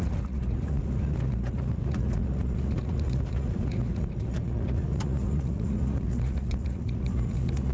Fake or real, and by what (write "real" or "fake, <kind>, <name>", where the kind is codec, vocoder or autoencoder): fake, vocoder, Vocos